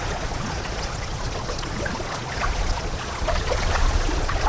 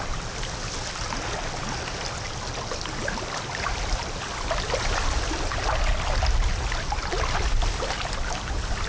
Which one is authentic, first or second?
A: second